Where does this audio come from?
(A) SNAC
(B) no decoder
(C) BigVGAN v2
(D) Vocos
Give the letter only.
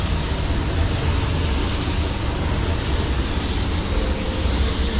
B